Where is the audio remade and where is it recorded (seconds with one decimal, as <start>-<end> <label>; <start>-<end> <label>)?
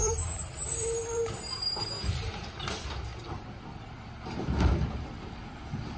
0.0-2.7 remade; 2.7-6.0 recorded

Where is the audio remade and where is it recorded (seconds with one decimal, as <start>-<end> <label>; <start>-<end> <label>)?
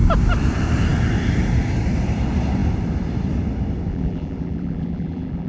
0.0-3.9 recorded; 3.9-5.5 remade